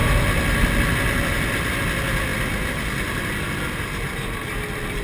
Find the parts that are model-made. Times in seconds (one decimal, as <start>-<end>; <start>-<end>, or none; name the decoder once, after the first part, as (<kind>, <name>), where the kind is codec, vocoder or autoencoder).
none